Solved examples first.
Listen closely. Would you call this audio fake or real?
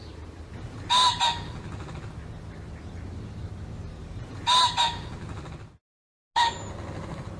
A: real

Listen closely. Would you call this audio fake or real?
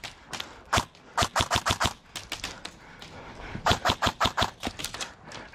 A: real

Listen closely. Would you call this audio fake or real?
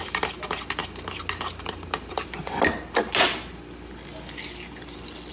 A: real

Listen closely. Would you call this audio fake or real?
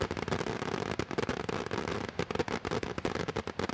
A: real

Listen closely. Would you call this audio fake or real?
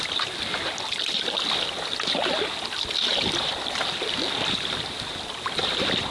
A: real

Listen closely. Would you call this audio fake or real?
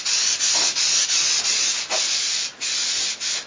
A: real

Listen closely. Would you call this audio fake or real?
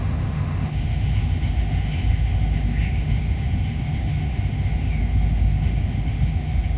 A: fake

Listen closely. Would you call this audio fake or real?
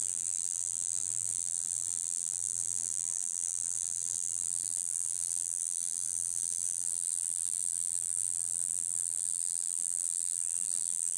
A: fake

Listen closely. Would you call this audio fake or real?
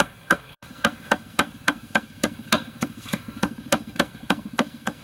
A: fake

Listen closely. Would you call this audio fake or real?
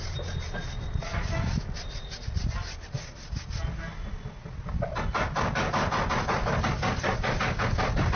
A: real